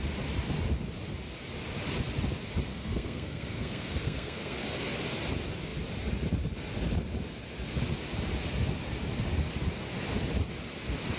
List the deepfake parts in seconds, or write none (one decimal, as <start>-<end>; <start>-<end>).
2.7-4.6